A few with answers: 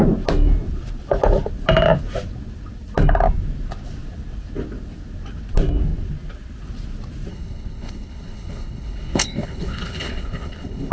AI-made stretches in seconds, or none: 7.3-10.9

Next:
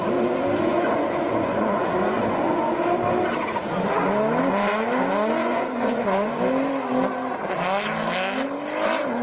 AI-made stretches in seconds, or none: 0.7-2.8; 5.4-6.4

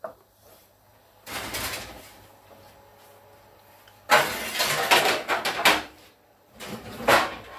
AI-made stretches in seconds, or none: 0.0-2.9; 5.0-7.6

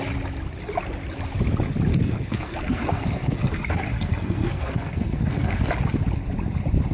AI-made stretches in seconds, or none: 1.9-5.7

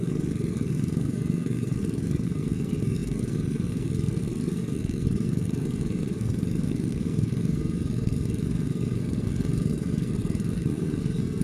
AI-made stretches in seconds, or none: 0.0-11.4

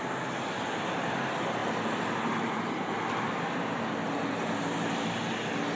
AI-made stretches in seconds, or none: none

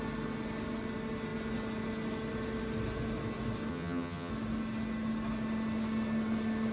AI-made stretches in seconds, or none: 3.7-4.3

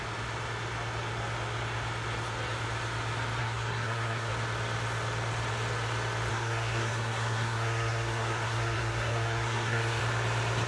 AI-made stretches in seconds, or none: 3.4-4.3; 6.3-10.0